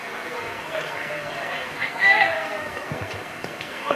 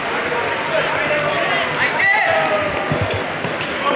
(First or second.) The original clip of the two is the second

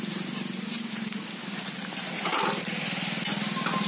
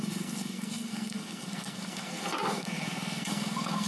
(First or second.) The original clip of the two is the first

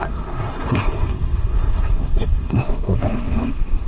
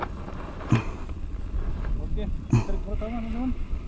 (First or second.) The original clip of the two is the second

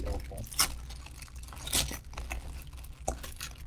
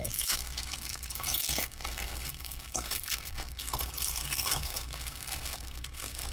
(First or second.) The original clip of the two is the first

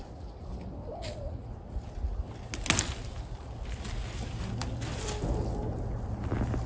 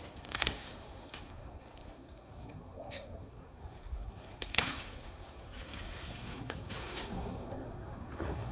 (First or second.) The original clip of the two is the first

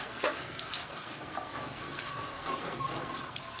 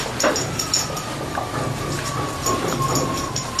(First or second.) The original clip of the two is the second